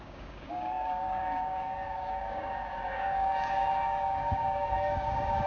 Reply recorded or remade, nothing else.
remade